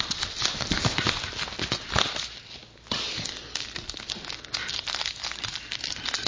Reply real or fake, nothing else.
real